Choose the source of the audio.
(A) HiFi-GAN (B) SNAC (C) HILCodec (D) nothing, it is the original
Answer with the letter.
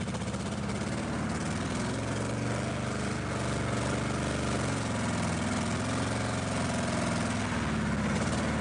D